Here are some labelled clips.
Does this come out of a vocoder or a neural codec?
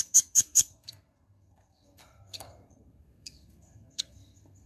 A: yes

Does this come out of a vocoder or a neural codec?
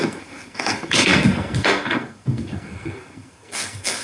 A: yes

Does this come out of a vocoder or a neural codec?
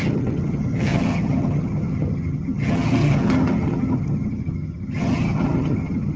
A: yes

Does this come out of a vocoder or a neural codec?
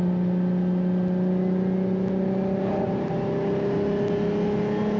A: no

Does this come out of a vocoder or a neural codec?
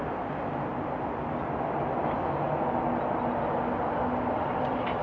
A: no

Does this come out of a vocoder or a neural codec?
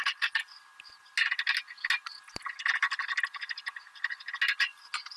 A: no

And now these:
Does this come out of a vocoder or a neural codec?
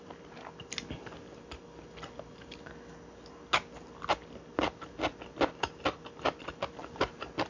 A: no